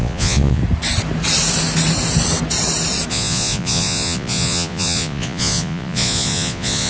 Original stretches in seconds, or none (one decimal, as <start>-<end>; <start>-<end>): 0.6-3.1